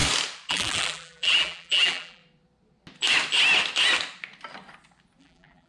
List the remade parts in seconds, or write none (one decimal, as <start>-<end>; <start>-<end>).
0.5-2.2; 5.2-5.7